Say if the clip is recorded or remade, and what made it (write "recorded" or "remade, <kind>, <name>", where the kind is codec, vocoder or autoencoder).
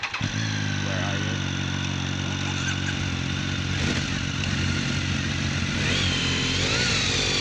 recorded